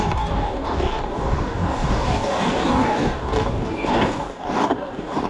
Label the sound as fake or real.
fake